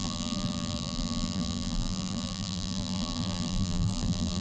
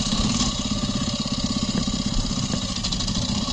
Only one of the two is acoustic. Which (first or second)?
second